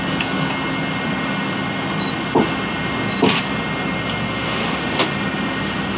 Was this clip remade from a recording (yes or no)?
no